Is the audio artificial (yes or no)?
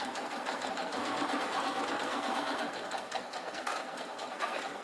yes